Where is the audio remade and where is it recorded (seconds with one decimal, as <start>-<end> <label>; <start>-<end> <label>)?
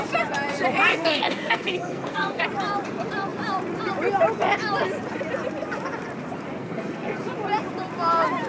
0.0-0.9 recorded; 0.9-2.4 remade; 2.4-6.6 recorded; 6.6-7.2 remade; 7.2-8.5 recorded